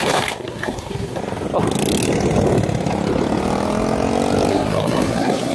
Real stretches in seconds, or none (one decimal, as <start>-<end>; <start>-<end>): 1.2-4.5